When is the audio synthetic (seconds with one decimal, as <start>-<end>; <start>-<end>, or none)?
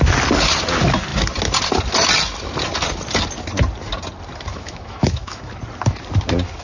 4.5-5.5